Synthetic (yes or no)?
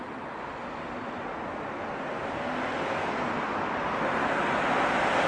no